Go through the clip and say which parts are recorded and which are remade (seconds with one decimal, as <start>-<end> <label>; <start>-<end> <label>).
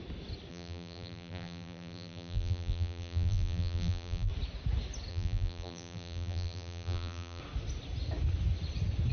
0.0-0.5 recorded; 0.5-4.3 remade; 4.3-5.1 recorded; 5.1-7.4 remade; 7.4-9.1 recorded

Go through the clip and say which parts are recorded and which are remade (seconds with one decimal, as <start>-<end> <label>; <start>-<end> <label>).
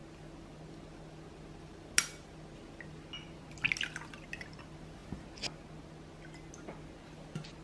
0.0-7.6 recorded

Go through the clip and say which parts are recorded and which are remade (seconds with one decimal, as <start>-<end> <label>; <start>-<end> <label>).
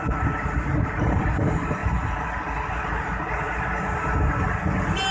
0.0-1.8 remade; 1.8-5.1 recorded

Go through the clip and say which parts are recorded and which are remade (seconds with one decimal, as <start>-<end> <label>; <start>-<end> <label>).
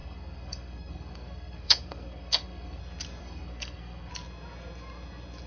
0.0-2.8 remade; 2.8-3.2 recorded; 3.2-4.1 remade; 4.1-5.5 recorded